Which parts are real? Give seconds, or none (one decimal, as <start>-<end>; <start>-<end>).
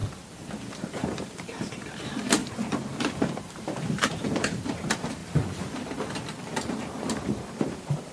0.0-0.8; 5.2-7.6